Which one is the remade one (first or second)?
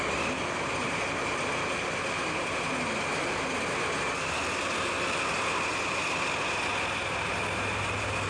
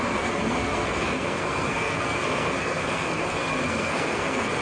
second